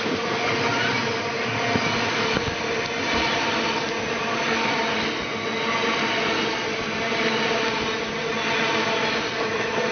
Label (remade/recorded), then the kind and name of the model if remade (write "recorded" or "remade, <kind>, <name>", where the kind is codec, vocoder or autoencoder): recorded